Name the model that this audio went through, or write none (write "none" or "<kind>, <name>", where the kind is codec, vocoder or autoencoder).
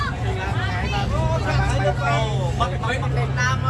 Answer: none